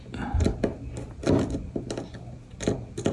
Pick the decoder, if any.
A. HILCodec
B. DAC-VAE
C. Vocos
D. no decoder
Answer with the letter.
D